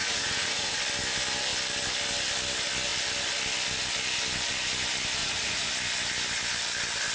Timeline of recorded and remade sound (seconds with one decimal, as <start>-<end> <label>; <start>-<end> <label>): 0.0-0.8 remade; 0.8-5.2 recorded; 5.2-5.7 remade; 5.7-7.1 recorded